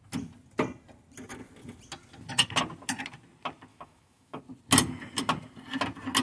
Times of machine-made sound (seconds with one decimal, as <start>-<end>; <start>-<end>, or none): 3.7-4.4